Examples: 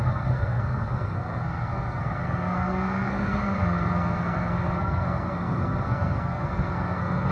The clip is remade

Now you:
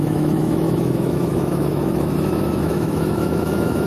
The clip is remade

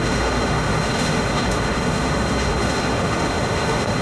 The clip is remade